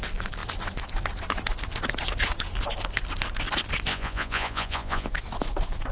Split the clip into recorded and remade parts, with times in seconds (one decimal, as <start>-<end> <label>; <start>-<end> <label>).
0.0-3.9 recorded; 3.9-5.1 remade; 5.1-5.9 recorded